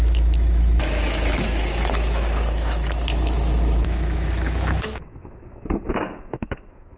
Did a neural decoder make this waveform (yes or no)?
yes